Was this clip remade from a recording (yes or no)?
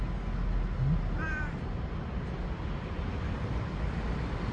no